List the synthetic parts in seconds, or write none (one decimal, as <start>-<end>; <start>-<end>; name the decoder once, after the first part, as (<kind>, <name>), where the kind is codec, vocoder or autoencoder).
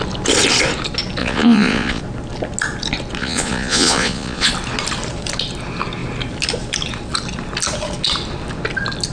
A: 1.2-2.0 (vocoder, Vocos); 3.2-4.5